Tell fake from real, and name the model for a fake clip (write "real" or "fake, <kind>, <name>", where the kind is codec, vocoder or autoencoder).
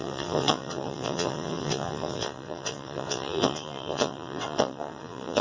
fake, vocoder, WaveNeXt